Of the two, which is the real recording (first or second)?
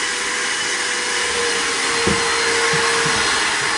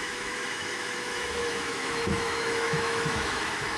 first